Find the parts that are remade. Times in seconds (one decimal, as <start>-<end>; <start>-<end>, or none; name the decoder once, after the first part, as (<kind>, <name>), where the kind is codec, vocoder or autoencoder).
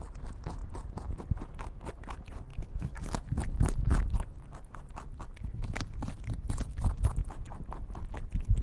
none